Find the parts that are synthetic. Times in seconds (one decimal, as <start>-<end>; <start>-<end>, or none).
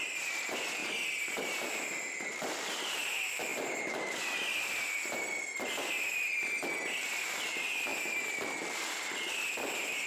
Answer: none